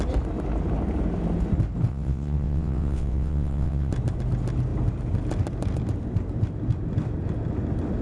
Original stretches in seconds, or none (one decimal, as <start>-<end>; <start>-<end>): 0.0-1.9; 3.9-8.0